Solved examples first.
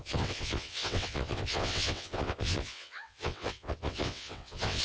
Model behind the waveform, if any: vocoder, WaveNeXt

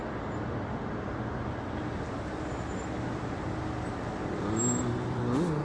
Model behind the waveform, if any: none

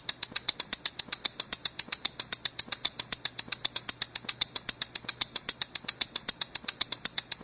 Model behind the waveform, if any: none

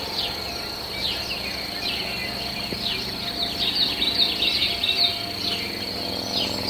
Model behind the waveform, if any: none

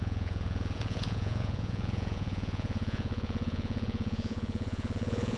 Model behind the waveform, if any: vocoder, Vocos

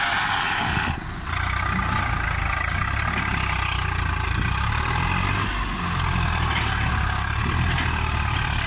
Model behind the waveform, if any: none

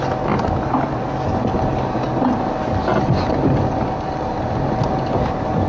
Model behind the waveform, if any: none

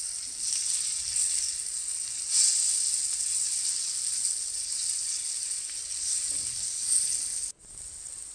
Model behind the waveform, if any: none